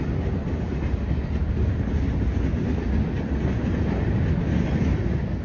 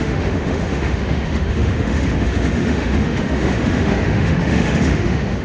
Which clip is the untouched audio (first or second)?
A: first